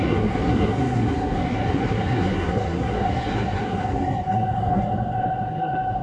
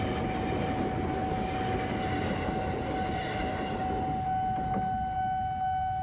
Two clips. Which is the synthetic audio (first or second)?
first